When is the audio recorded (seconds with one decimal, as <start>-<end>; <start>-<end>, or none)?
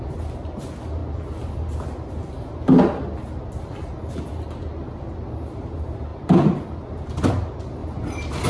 0.0-8.5